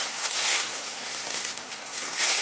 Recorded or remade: remade